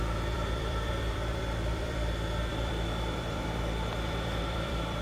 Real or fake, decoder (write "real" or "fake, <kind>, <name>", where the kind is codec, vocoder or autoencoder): fake, vocoder, BigVGAN v2